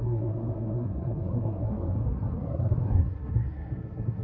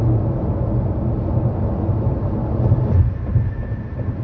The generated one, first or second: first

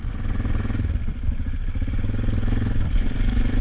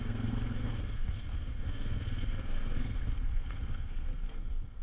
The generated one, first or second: second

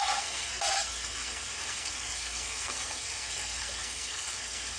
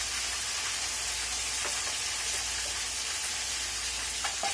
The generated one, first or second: first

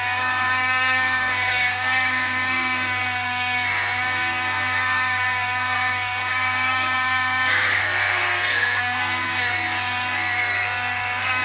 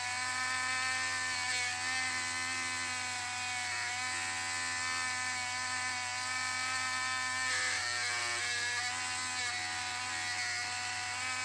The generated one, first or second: first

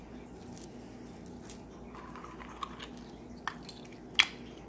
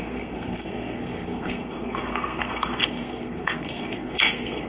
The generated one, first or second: second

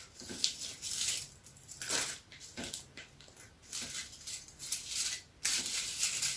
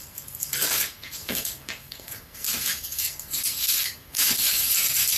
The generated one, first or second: second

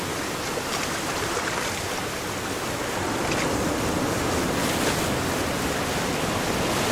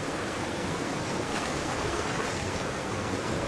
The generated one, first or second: second